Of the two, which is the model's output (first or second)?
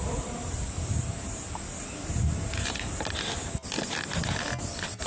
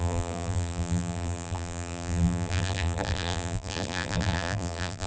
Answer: second